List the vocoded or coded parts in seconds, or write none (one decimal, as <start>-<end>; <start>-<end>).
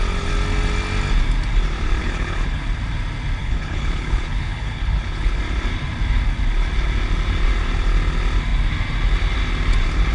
2.0-2.6; 3.4-5.4